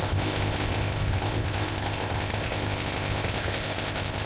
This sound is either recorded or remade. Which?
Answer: remade